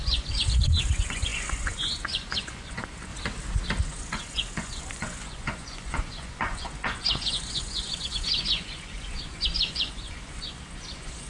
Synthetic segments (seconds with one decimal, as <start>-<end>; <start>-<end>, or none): 0.0-3.1; 3.8-11.3